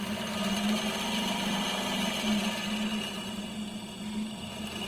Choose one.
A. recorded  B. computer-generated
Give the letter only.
A